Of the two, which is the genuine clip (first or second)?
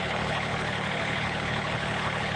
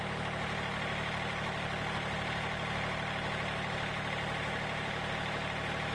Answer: second